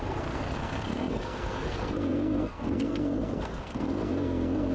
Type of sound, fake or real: fake